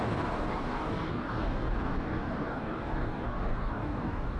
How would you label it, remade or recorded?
remade